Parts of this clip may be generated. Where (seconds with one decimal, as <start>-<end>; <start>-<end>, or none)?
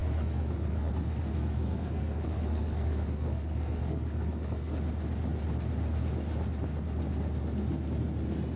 0.0-0.9; 1.3-4.7